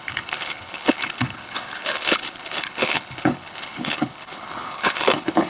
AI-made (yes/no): yes